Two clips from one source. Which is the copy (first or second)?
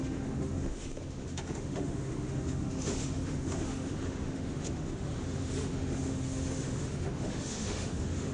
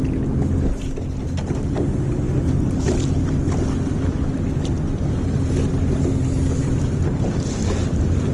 first